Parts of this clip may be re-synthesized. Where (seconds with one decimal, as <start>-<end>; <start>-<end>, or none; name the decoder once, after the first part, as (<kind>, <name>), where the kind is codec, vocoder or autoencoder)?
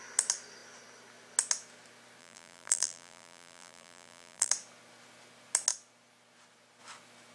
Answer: 2.2-4.5 (vocoder, BigVGAN v2)